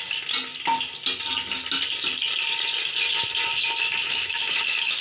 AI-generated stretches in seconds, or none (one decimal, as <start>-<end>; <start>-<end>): 4.0-5.0